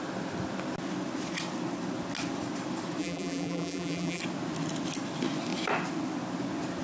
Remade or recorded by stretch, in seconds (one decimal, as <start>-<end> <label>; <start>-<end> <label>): 0.0-3.0 recorded; 3.0-4.2 remade; 4.2-6.8 recorded